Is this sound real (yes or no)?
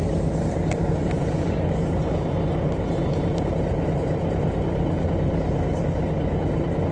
yes